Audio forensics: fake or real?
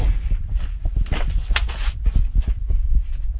real